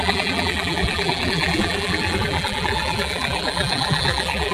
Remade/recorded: remade